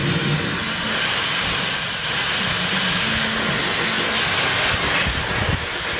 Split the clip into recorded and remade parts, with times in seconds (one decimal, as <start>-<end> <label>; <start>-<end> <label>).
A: 0.0-6.0 recorded